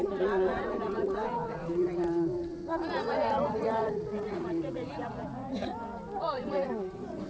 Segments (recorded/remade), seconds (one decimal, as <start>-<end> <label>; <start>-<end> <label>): 0.0-5.7 remade; 5.7-6.2 recorded; 6.2-7.3 remade